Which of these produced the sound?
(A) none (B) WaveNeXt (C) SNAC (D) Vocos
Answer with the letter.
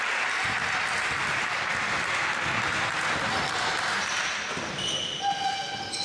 A